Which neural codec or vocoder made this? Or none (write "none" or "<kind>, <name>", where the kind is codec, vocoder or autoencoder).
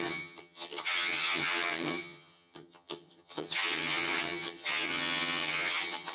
vocoder, HiFi-GAN